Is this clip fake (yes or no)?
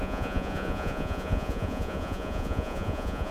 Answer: yes